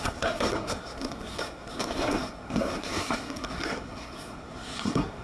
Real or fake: fake